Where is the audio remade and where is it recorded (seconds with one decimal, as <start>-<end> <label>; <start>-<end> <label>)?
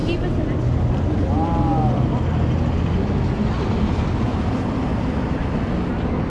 0.0-6.3 recorded